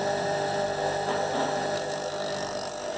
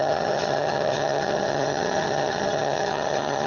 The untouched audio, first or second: first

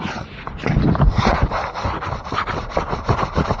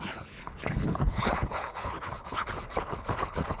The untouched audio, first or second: first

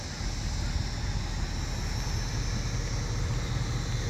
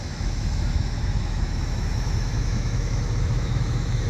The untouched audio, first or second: first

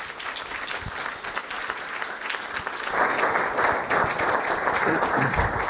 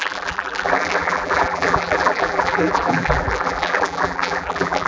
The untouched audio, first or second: first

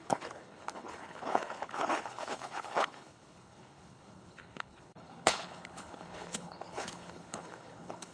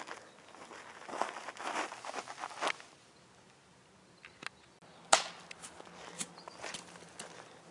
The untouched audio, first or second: second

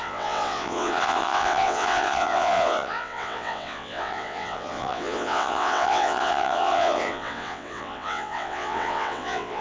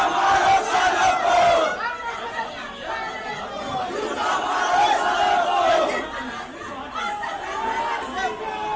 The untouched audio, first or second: second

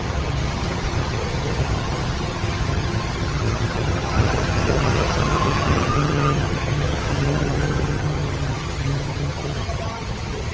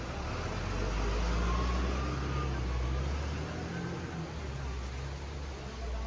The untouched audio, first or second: second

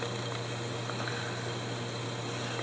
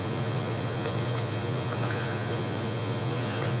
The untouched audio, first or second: first